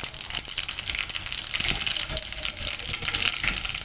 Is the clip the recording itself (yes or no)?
yes